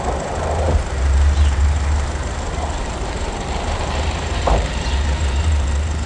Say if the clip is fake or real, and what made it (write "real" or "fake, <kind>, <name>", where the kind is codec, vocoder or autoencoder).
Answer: fake, vocoder, BigVGAN v2